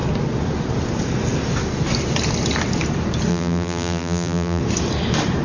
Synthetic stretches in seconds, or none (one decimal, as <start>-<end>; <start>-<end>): 3.3-4.6